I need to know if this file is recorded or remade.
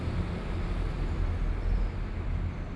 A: recorded